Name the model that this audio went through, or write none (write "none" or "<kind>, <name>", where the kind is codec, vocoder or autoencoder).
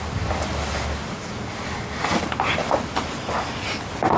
none